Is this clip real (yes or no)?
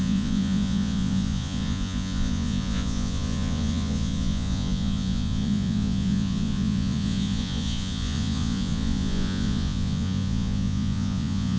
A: no